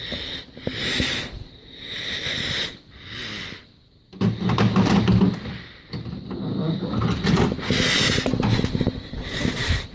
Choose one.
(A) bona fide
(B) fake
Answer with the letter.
A